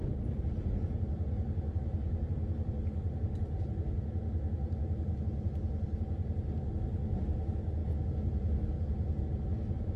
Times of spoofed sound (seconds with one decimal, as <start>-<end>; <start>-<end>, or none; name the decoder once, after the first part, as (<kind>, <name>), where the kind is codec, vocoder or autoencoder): none